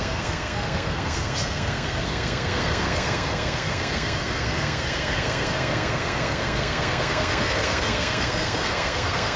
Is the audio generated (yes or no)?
yes